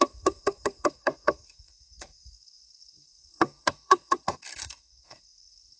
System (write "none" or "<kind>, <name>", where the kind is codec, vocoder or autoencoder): codec, SNAC